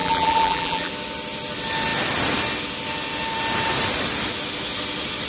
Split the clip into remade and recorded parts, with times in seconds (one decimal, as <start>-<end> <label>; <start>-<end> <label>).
0.0-0.9 remade; 0.9-5.3 recorded